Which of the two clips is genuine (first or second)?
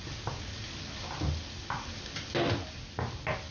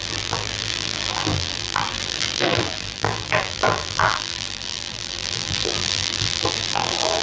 first